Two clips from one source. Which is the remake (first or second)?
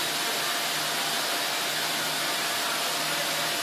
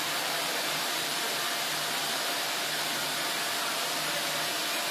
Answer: second